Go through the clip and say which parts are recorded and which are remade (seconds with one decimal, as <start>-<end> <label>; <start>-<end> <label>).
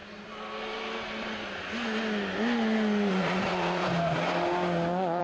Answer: 0.0-3.1 recorded; 3.1-3.8 remade; 3.8-5.2 recorded